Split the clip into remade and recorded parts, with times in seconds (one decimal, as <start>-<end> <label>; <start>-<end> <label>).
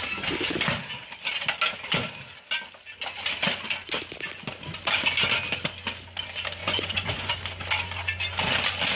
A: 0.0-6.6 recorded; 6.6-7.3 remade; 7.3-9.0 recorded